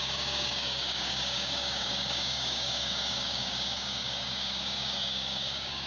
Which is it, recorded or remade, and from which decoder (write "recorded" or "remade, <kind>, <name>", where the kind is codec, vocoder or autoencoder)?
remade, codec, DAC